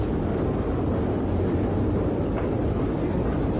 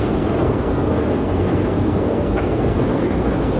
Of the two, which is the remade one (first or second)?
second